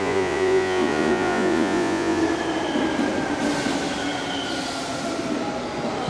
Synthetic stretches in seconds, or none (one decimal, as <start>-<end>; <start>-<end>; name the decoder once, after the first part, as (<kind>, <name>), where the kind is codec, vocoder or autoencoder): 0.0-2.2 (vocoder, Vocos)